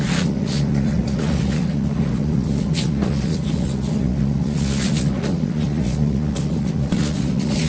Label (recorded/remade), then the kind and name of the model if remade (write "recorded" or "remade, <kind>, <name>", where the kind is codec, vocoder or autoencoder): remade, vocoder, Vocos